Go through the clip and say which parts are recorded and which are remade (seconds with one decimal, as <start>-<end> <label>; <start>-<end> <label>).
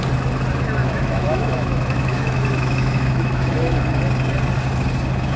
0.0-0.8 recorded; 0.8-4.0 remade; 4.0-5.4 recorded